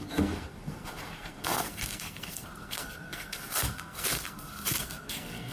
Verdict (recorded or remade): remade